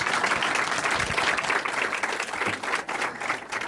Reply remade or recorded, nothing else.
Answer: recorded